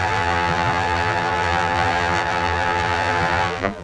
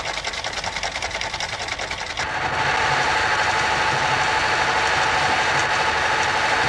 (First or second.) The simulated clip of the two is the first